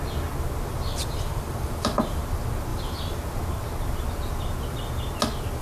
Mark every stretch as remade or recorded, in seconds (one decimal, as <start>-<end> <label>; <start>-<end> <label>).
0.0-0.9 recorded; 0.9-2.2 remade; 2.2-2.7 recorded; 2.7-3.2 remade; 3.2-5.6 recorded